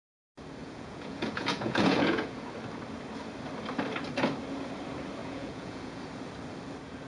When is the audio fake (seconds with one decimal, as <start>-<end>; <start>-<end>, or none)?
0.6-2.5; 5.2-6.0